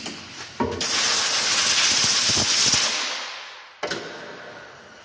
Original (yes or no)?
yes